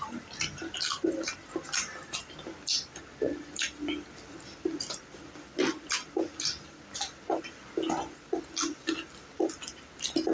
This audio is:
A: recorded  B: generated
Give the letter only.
A